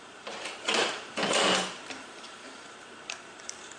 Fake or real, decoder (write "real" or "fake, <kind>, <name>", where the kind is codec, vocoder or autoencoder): fake, vocoder, BigVGAN v2